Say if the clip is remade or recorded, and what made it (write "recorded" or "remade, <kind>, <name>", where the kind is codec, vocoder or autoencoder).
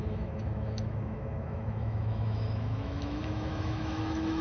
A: remade, autoencoder, DAC-VAE